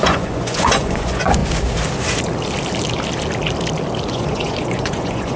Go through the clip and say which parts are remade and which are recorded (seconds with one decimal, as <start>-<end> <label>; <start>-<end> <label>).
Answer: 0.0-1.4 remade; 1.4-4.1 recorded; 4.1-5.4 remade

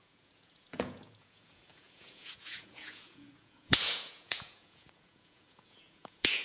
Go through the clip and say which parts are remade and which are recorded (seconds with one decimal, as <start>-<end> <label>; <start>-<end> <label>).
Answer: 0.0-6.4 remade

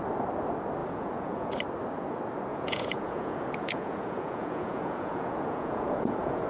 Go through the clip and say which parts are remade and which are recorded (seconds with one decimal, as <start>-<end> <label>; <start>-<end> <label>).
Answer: 0.0-0.8 recorded; 0.8-1.5 remade; 1.5-2.5 recorded; 2.5-6.5 remade